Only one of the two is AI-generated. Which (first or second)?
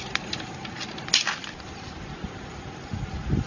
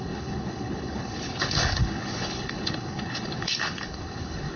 second